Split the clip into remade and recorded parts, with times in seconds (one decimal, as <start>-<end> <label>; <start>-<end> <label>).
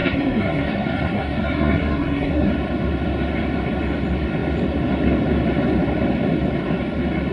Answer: 0.0-2.5 remade; 2.5-7.3 recorded